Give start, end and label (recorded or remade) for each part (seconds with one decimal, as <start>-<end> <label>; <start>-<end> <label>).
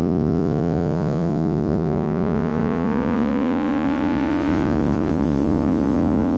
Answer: 0.0-6.4 remade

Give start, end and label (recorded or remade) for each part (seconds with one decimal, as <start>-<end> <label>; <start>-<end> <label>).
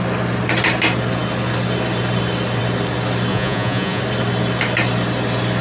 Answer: 0.0-3.3 recorded; 3.3-4.0 remade; 4.0-5.6 recorded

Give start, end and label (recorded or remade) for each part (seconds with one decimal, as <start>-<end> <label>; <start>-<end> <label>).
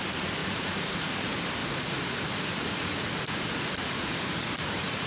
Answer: 0.0-0.4 recorded; 0.4-1.1 remade; 1.1-1.6 recorded; 1.6-5.1 remade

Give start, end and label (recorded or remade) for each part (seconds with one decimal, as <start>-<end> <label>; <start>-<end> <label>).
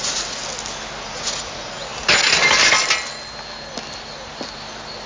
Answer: 0.0-0.4 remade; 0.4-1.0 recorded; 1.0-1.9 remade; 1.9-5.1 recorded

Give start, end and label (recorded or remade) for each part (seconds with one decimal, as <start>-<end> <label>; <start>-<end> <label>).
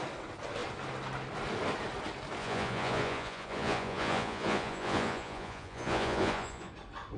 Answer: 0.0-2.4 recorded; 2.4-6.7 remade; 6.7-7.2 recorded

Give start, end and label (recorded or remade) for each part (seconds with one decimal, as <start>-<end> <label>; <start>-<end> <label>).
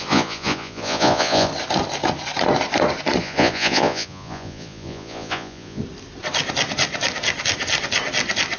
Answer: 0.0-1.5 remade; 1.5-3.2 recorded; 3.2-5.8 remade; 5.8-8.6 recorded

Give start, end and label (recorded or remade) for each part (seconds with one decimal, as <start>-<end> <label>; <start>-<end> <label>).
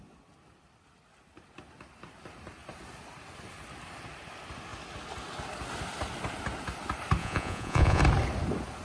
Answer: 0.0-7.2 recorded; 7.2-8.0 remade; 8.0-8.8 recorded